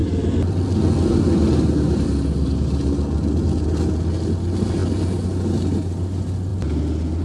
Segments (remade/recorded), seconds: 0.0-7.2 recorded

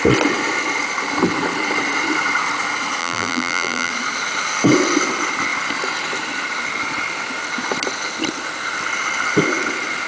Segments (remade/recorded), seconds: 0.0-3.0 recorded; 3.0-3.9 remade; 3.9-10.1 recorded

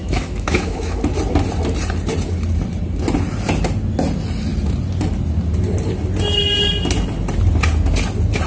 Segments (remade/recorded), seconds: 0.0-1.0 remade; 1.0-8.5 recorded

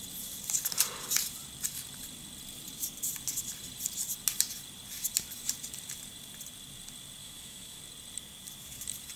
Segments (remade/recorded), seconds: 0.0-7.2 recorded; 7.2-7.8 remade; 7.8-9.2 recorded

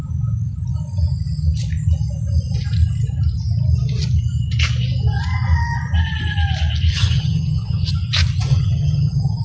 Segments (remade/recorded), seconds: 0.0-6.9 recorded; 6.9-7.9 remade; 7.9-8.5 recorded; 8.5-9.4 remade